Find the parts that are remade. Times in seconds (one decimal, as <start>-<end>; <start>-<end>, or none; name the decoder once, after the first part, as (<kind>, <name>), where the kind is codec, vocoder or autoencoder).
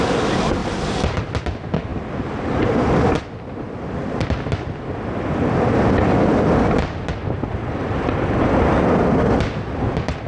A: 0.6-1.2 (vocoder, BigVGAN v2)